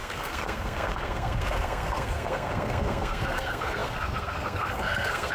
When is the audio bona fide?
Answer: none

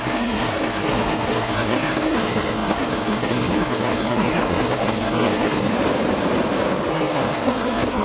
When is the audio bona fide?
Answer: 5.7-6.9

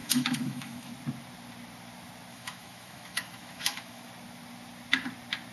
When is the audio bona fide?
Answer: 0.9-2.3; 4.1-5.5

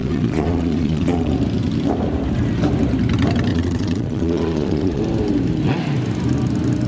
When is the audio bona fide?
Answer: 1.3-3.5; 5.0-6.9

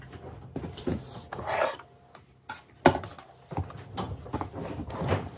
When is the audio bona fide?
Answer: 0.0-5.4

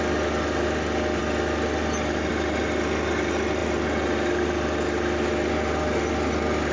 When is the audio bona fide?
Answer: 0.0-6.7

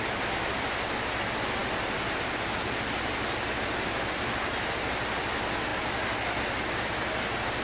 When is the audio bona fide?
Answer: 0.0-7.6